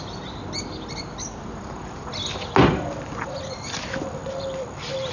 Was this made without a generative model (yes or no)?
yes